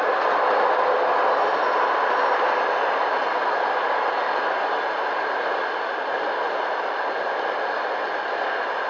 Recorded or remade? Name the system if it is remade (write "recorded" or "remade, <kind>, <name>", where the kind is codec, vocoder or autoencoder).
recorded